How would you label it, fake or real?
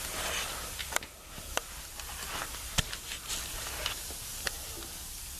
real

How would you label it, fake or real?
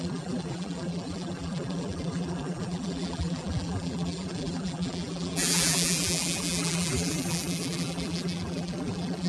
fake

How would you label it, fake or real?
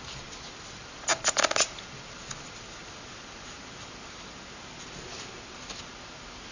real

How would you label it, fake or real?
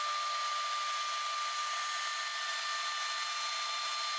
real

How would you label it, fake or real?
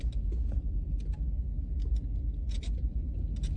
real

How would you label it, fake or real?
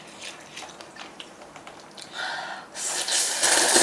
fake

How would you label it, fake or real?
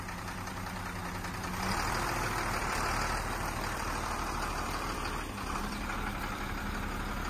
fake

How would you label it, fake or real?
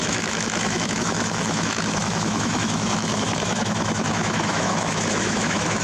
fake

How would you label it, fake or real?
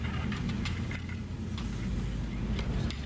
real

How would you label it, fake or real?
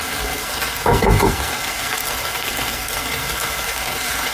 fake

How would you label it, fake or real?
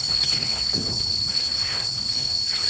fake